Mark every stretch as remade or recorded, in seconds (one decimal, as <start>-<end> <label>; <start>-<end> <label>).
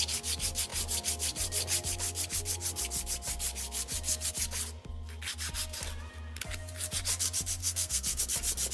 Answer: 0.0-7.6 recorded; 7.6-8.2 remade; 8.2-8.7 recorded